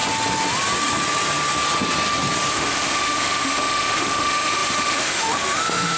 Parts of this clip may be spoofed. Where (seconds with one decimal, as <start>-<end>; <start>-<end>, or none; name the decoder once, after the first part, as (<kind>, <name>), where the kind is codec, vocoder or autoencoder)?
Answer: 2.5-6.0 (autoencoder, DAC-VAE)